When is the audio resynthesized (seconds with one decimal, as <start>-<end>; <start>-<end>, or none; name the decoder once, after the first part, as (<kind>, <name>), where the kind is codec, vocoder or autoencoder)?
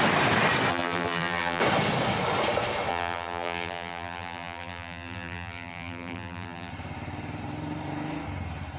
0.7-1.6 (vocoder, BigVGAN v2); 2.9-6.7